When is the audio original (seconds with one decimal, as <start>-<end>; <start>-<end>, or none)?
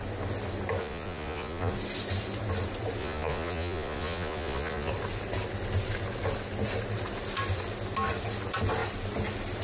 0.0-0.8; 1.7-3.0; 4.9-9.6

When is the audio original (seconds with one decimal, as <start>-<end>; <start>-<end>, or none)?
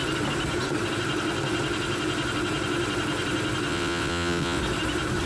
0.0-3.7; 4.6-5.3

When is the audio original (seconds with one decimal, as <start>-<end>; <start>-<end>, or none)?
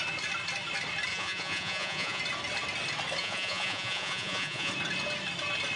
0.0-1.1; 2.2-3.2; 4.7-5.8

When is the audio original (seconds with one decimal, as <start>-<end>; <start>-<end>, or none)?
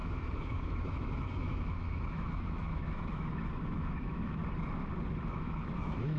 4.4-5.1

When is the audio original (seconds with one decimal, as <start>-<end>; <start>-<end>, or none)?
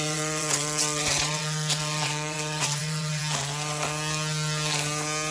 3.2-5.3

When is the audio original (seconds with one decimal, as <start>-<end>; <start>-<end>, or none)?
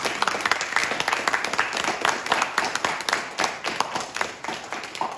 0.8-1.9; 2.7-3.3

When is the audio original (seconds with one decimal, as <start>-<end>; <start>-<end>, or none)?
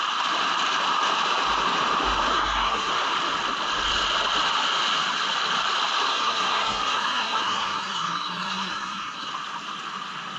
0.0-2.3; 2.9-6.1; 9.3-10.4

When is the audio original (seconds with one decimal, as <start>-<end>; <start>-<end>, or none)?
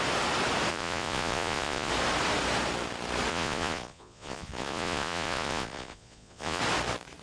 0.0-0.7; 1.9-3.3; 6.6-7.2